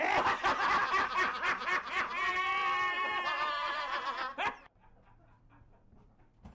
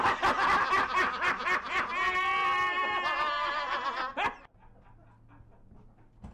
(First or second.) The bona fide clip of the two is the second